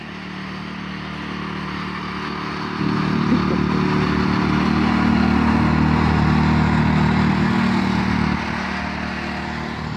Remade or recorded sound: recorded